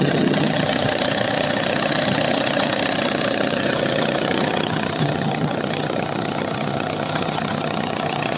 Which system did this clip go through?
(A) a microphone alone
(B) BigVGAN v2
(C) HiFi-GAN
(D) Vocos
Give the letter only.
C